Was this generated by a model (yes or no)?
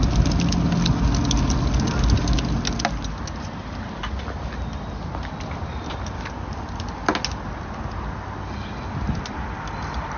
no